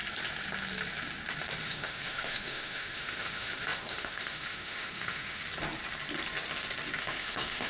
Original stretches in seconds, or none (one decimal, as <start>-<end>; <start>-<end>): 0.0-1.6; 5.4-7.0